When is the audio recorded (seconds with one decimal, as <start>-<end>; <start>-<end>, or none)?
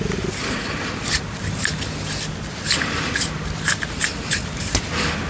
0.0-5.3